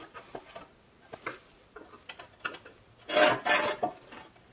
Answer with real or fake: real